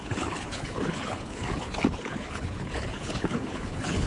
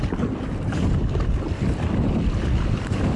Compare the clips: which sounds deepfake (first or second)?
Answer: first